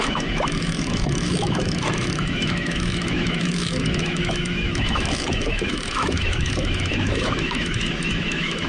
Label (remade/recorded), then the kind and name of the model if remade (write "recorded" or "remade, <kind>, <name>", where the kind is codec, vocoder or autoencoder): remade, autoencoder, DAC-VAE